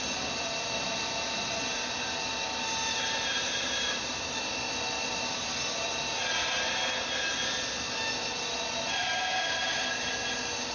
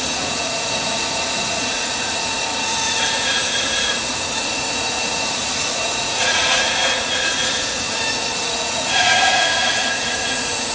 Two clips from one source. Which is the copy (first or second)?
second